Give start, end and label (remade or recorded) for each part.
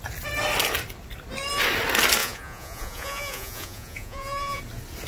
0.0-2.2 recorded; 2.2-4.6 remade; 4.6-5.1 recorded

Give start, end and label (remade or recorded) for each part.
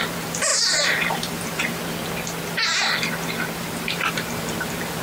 0.0-1.8 remade; 1.8-3.6 recorded; 3.6-5.0 remade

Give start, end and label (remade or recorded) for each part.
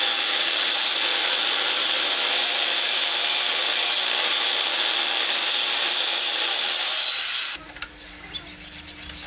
0.0-1.8 recorded; 1.8-2.5 remade; 2.5-9.3 recorded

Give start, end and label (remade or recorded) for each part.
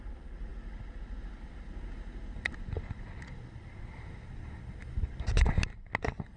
0.0-6.4 recorded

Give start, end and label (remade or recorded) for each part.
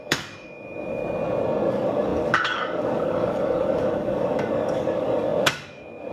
0.0-1.0 remade; 1.0-1.7 recorded; 1.7-6.1 remade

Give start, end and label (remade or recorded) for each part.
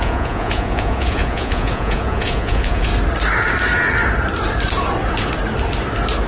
0.0-2.9 remade; 2.9-6.3 recorded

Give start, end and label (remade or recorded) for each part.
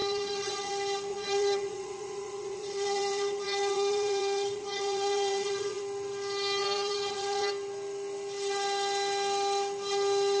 0.0-0.7 remade; 0.7-1.1 recorded; 1.1-5.8 remade; 5.8-6.6 recorded; 6.6-7.5 remade; 7.5-10.4 recorded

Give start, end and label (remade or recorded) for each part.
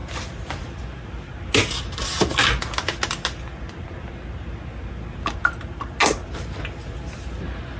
0.0-7.8 recorded